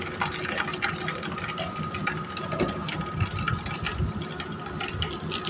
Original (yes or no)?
yes